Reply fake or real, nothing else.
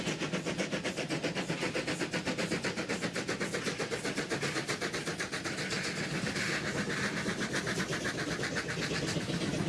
real